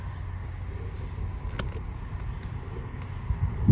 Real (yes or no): yes